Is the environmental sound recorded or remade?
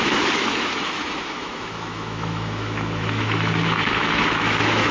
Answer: remade